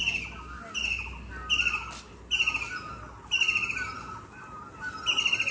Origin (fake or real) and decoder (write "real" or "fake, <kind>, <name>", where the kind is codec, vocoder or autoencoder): real